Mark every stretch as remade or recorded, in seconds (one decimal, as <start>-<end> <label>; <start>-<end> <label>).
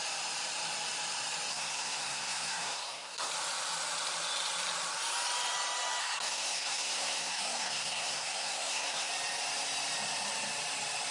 0.0-1.5 recorded; 1.5-3.3 remade; 3.3-6.0 recorded; 6.0-9.1 remade; 9.1-11.1 recorded